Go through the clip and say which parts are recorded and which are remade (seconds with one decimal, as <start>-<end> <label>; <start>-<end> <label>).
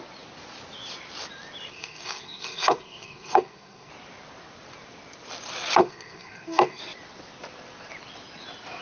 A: 0.0-1.7 recorded; 1.7-3.9 remade; 3.9-5.8 recorded; 5.8-6.8 remade; 6.8-8.8 recorded